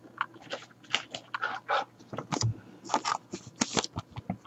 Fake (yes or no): no